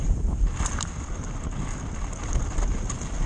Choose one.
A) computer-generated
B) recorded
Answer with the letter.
B